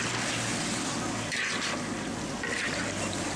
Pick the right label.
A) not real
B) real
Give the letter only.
B